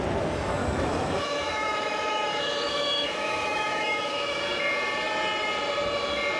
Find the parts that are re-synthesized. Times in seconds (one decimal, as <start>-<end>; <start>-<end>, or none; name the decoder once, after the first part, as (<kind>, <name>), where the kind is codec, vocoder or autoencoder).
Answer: 0.6-4.4 (autoencoder, DAC-VAE)